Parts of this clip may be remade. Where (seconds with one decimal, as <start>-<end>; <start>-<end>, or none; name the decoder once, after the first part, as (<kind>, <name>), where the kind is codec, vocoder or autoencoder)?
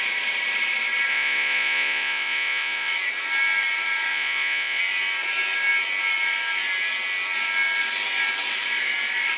1.1-2.9 (vocoder, Vocos); 4.1-4.8